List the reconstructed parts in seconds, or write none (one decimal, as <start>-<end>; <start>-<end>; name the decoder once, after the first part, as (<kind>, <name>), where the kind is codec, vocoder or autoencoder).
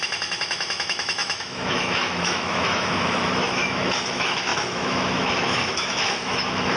0.0-6.8 (autoencoder, DAC-VAE)